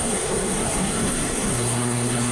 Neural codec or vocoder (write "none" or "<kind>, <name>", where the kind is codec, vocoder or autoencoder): codec, SNAC